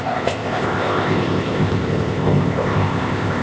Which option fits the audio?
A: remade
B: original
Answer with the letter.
A